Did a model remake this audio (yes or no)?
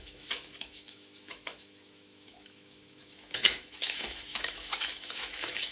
yes